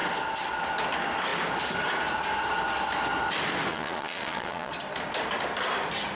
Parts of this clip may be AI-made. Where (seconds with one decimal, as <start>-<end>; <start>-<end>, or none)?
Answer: 3.7-4.7